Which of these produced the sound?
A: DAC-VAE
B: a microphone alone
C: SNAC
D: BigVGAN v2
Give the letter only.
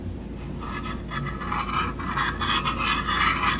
B